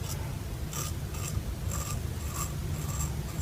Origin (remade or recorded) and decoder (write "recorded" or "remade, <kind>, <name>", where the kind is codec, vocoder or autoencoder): recorded